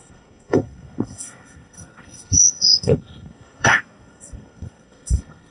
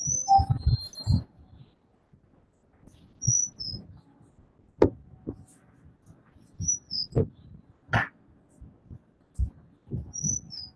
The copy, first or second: first